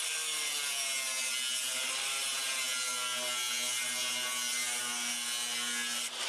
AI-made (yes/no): no